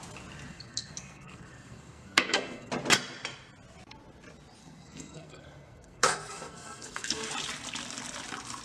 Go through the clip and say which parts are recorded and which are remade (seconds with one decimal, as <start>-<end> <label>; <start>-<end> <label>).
0.0-0.5 recorded; 0.5-2.7 remade; 2.7-4.6 recorded; 4.6-7.3 remade; 7.3-8.6 recorded